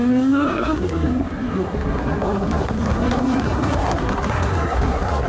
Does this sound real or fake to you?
fake